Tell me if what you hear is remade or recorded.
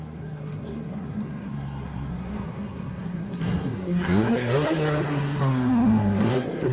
remade